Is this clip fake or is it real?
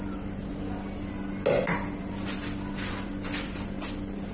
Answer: real